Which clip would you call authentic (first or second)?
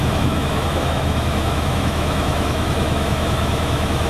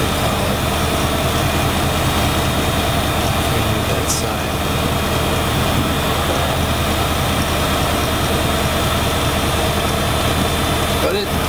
second